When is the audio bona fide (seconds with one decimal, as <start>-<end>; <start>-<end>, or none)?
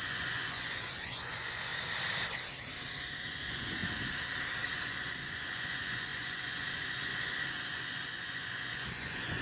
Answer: 1.7-3.2; 3.8-4.7